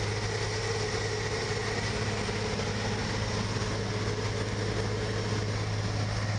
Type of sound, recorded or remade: recorded